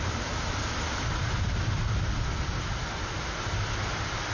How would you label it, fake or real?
real